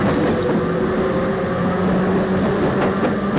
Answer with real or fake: real